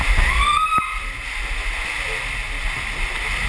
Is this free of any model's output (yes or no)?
yes